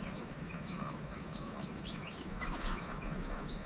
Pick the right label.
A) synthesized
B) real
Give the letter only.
A